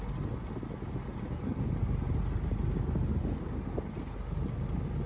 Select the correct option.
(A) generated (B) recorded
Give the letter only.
B